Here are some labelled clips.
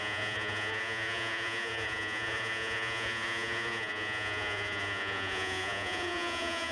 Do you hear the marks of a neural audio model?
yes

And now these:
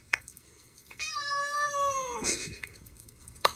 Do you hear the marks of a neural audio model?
yes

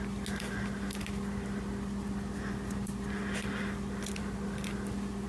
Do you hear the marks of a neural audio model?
no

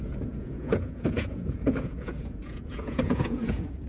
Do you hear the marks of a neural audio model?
yes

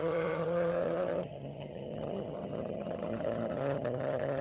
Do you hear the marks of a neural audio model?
yes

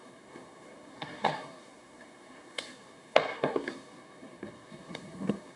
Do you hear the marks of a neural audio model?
yes